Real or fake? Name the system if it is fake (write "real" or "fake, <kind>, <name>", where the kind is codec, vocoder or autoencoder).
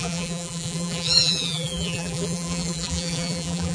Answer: fake, vocoder, BigVGAN v2